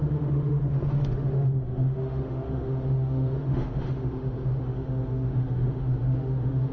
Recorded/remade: remade